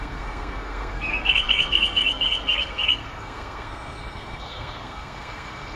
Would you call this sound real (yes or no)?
no